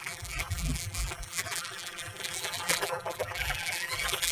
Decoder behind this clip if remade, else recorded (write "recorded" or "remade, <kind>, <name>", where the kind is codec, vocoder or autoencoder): remade, vocoder, BigVGAN v2